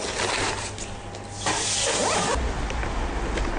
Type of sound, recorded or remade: recorded